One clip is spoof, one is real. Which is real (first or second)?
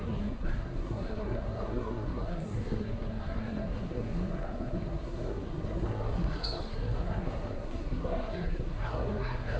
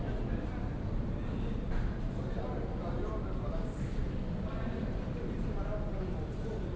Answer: second